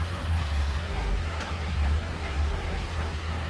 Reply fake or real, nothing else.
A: fake